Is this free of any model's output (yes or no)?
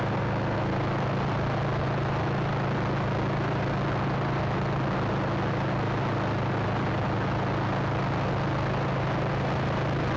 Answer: yes